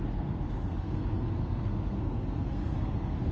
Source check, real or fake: fake